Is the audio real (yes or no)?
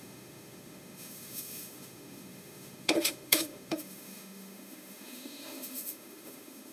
no